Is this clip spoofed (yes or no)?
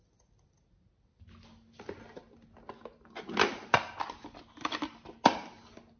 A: no